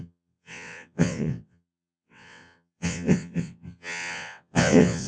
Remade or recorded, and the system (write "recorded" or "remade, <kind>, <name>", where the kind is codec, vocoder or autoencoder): remade, vocoder, WaveNeXt